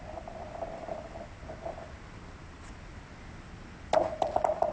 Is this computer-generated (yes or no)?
no